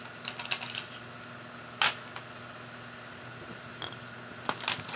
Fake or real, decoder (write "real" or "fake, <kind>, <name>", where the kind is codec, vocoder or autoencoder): real